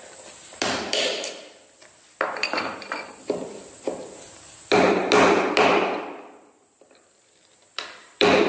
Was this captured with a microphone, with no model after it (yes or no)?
no